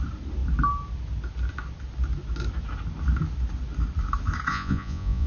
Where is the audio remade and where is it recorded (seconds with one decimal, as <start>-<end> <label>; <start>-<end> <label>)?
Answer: 0.0-4.5 recorded; 4.5-5.3 remade